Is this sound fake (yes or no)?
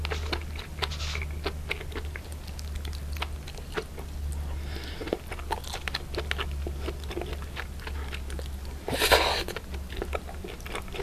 no